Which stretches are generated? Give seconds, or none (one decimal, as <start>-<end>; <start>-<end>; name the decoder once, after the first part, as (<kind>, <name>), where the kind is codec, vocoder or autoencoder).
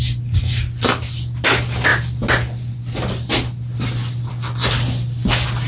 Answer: none